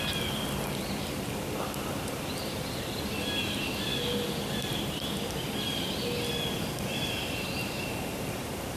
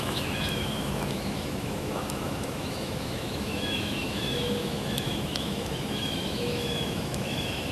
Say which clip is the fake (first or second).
second